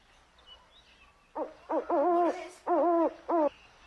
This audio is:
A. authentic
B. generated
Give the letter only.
A